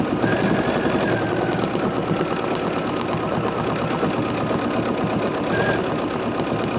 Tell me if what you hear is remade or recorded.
recorded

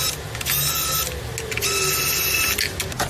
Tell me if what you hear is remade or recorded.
recorded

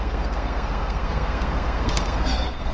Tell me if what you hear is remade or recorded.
remade